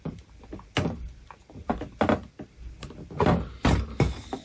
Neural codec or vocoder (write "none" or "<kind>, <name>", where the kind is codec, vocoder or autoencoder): none